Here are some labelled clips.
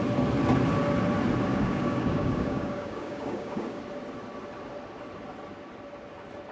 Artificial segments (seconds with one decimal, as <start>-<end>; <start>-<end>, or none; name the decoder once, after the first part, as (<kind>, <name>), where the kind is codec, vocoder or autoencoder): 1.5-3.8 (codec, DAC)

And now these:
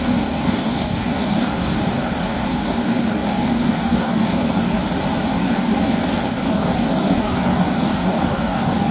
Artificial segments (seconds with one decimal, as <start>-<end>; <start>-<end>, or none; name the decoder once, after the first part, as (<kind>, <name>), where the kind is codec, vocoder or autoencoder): 0.0-4.8 (codec, DAC); 5.4-8.9

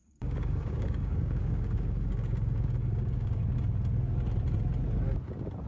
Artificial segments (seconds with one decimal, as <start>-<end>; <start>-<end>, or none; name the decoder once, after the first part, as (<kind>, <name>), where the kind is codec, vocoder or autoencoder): 0.0-3.4 (codec, DAC)

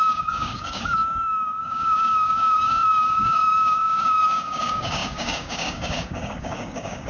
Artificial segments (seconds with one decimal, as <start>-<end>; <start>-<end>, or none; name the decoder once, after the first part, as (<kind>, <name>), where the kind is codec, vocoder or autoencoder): 0.0-7.1 (codec, DAC)

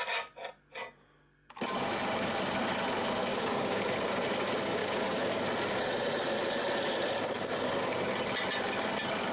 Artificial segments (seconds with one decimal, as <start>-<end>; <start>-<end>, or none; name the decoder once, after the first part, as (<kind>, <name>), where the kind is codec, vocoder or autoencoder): 3.3-3.8 (codec, DAC); 4.8-5.4

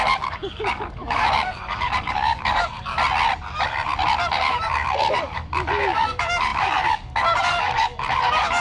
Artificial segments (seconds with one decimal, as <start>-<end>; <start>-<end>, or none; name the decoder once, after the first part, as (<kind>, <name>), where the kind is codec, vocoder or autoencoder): 0.0-2.9 (codec, DAC); 4.1-8.6